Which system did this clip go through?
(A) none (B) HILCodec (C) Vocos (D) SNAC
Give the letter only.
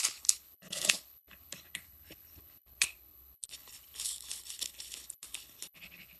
B